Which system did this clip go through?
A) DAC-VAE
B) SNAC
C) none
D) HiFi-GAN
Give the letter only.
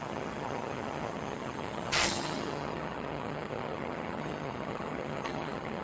D